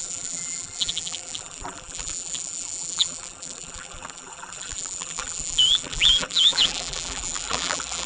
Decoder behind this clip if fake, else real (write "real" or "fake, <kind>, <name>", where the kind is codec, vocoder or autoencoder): fake, vocoder, BigVGAN v2